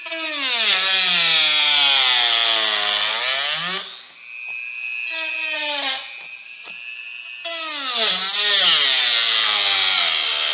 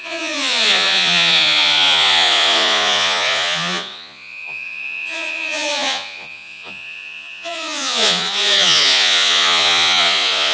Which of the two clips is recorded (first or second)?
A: first